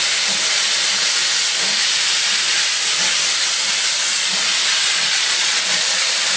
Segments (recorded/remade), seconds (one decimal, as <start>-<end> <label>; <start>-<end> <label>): 0.0-4.8 recorded; 4.8-6.0 remade; 6.0-6.4 recorded